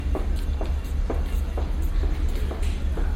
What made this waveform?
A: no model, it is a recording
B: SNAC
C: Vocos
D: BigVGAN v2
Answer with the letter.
A